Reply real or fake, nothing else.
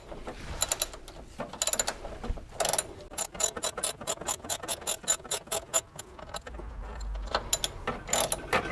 real